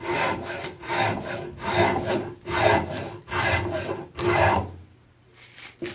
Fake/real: real